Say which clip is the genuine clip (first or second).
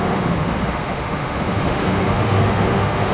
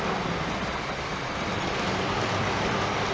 second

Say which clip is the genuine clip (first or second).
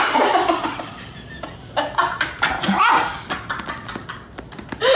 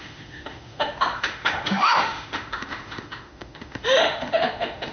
first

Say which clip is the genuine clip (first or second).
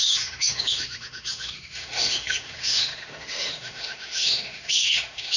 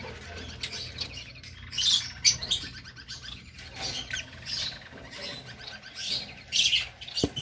second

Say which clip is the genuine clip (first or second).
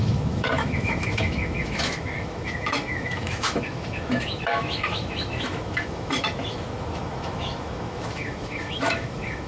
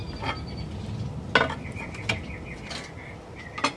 second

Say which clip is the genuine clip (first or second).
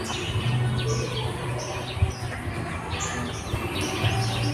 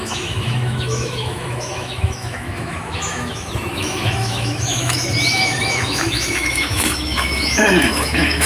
first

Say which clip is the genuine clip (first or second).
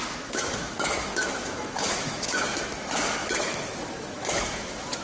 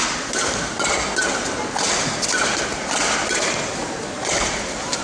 second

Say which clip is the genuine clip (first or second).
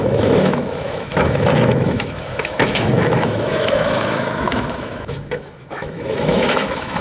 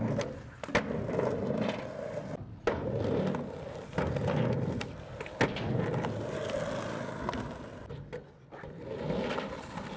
second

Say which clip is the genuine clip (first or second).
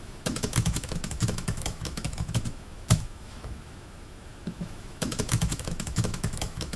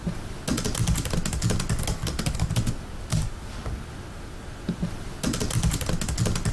second